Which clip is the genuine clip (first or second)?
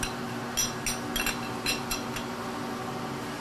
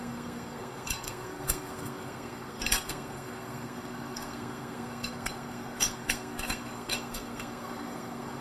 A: first